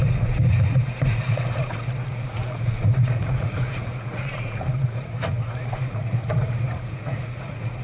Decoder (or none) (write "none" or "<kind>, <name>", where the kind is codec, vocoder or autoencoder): vocoder, Vocos